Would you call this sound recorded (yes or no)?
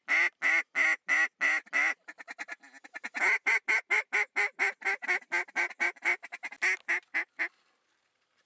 yes